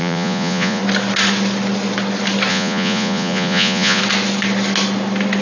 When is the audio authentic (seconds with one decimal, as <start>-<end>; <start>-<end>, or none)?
0.8-2.5; 4.0-5.4